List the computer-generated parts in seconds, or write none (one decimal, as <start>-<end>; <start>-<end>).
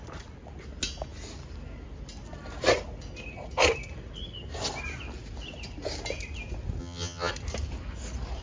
6.8-7.3